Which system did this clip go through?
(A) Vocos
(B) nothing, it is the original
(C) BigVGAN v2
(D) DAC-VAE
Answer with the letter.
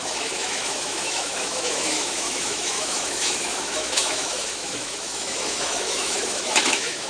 D